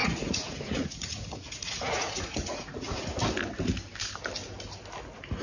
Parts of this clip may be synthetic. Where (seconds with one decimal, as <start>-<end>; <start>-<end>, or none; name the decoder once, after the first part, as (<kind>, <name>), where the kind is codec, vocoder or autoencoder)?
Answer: 0.0-3.2 (vocoder, Vocos)